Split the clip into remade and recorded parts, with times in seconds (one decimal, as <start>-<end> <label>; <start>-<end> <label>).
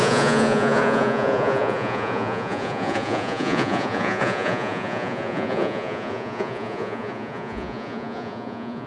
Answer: 0.0-8.9 remade